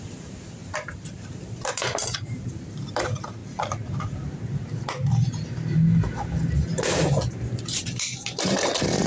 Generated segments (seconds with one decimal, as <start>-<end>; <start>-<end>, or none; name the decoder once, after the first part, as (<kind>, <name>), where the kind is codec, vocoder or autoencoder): 0.0-9.1 (vocoder, BigVGAN v2)